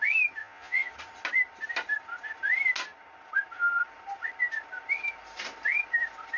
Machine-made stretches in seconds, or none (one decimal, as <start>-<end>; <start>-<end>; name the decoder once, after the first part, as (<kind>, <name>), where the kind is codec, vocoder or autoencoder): 0.4-0.9 (vocoder, Vocos)